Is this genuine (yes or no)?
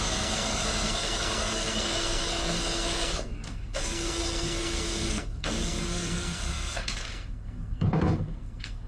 no